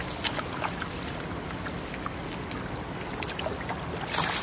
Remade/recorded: recorded